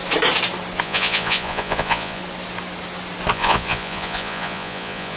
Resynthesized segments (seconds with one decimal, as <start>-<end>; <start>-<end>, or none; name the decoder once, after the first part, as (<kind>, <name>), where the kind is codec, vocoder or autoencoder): 0.8-2.2 (vocoder, Vocos); 3.3-5.2